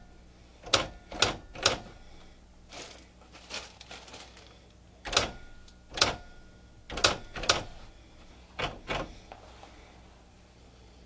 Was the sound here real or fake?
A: real